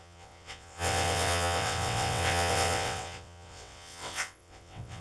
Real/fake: fake